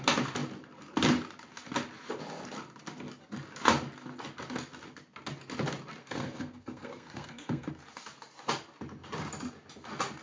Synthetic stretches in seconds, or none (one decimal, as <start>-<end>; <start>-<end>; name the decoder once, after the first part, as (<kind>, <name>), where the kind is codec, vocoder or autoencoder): 6.0-7.7 (codec, SNAC)